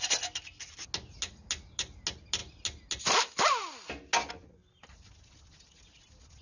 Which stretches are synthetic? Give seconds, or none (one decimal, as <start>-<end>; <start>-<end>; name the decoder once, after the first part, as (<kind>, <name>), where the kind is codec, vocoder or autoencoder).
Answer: none